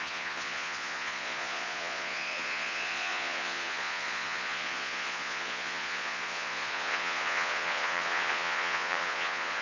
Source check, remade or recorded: remade